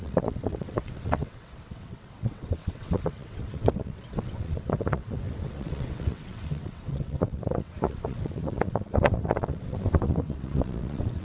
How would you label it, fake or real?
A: fake